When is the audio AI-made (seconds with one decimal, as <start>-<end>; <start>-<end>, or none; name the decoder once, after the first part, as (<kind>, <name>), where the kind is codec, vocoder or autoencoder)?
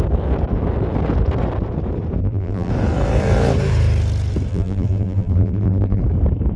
2.2-2.7 (vocoder, BigVGAN v2); 4.5-6.0